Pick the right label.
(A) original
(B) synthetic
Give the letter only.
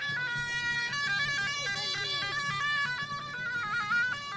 A